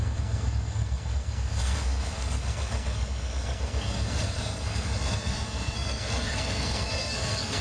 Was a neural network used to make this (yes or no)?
yes